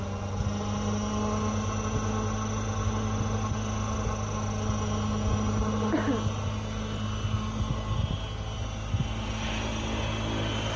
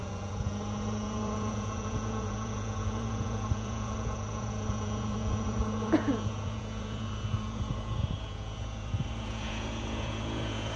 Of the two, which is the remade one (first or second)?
second